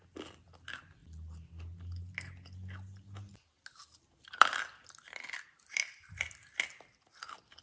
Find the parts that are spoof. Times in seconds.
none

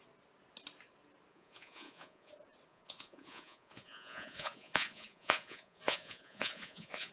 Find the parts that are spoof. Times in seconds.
1.3-2.3 (vocoder, Vocos); 2.7-7.1